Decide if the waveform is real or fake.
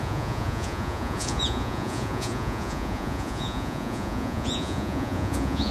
fake